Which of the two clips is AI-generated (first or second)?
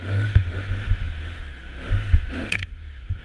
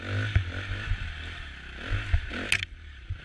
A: first